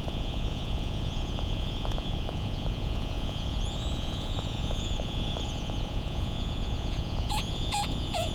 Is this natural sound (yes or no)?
no